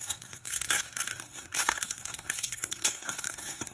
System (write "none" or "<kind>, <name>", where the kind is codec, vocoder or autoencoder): codec, SNAC